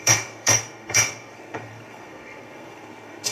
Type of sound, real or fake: fake